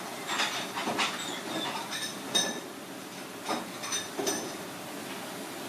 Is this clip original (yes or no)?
yes